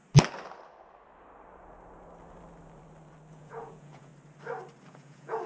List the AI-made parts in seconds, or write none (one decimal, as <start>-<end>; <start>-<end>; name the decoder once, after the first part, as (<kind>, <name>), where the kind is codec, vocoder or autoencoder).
3.3-4.1 (vocoder, Vocos); 4.9-5.5